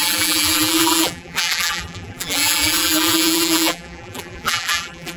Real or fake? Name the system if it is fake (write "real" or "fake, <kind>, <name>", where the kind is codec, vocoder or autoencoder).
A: fake, vocoder, BigVGAN v2